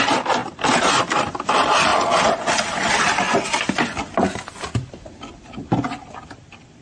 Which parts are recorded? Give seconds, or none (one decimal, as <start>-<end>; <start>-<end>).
0.0-6.8